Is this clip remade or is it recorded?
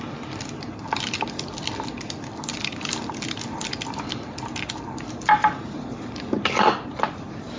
recorded